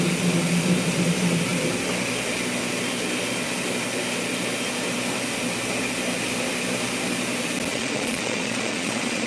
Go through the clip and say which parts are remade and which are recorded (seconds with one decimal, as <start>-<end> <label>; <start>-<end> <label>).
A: 0.0-7.7 recorded; 7.7-9.3 remade